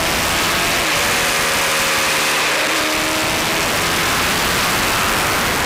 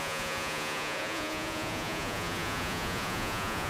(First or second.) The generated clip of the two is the second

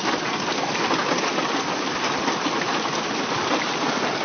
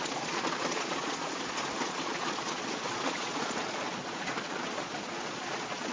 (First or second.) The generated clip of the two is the second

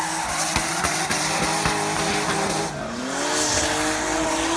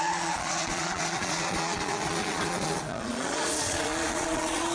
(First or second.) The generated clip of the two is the second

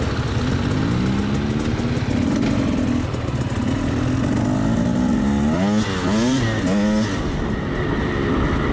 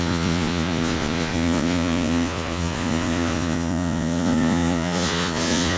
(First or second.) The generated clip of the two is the second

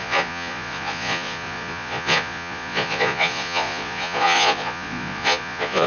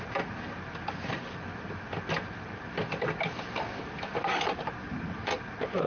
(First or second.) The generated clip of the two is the first